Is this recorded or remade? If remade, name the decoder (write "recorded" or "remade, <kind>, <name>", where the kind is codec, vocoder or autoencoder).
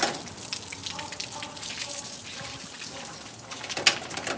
recorded